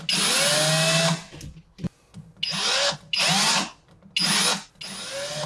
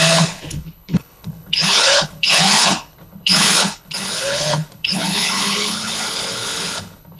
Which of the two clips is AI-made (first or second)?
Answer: second